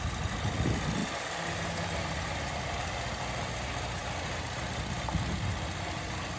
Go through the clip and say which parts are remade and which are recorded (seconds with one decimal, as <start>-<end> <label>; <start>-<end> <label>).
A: 0.0-6.4 recorded

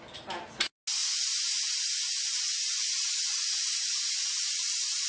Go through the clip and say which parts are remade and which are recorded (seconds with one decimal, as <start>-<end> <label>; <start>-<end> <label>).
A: 0.0-5.1 recorded